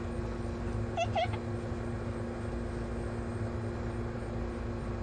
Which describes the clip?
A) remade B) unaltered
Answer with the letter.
B